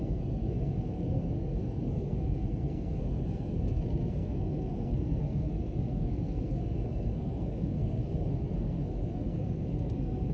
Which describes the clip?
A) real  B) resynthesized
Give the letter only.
B